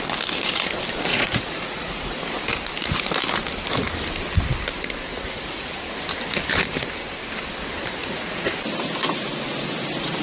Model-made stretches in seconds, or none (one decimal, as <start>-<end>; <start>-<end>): 1.1-2.2; 5.1-5.8; 8.0-8.5